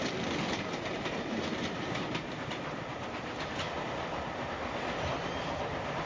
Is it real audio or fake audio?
real